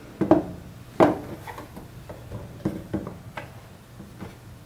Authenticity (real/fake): real